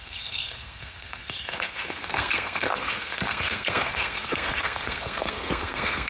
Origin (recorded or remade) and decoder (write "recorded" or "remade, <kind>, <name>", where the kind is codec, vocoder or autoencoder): remade, codec, SNAC